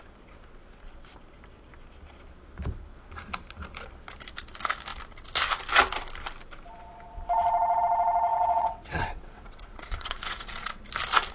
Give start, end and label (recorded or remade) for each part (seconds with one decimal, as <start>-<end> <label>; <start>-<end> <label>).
0.0-8.3 recorded; 8.3-10.8 remade; 10.8-11.3 recorded